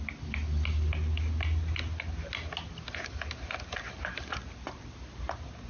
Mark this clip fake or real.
real